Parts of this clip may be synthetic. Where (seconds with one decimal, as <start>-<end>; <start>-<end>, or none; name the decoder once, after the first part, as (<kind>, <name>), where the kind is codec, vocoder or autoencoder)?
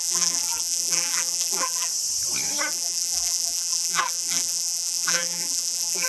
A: 0.0-1.9 (vocoder, BigVGAN v2); 2.7-6.1